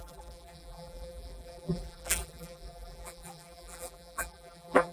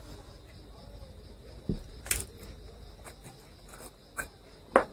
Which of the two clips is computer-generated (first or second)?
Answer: first